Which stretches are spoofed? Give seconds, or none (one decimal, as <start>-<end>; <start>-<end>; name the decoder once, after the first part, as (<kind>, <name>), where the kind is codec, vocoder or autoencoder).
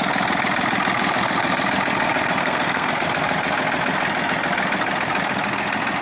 2.4-2.9 (codec, SNAC)